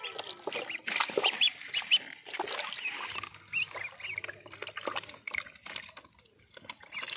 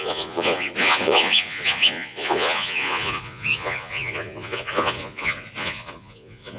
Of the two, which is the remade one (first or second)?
second